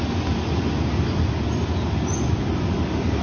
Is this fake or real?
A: real